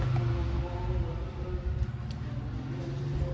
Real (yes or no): yes